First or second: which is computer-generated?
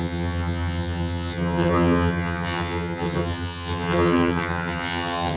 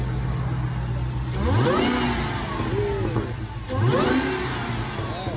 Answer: first